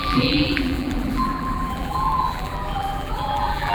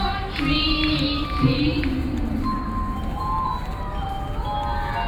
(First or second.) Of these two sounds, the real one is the second